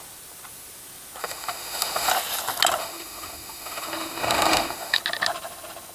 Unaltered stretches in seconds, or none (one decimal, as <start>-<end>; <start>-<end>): 0.0-1.2; 2.1-2.8; 5.0-5.9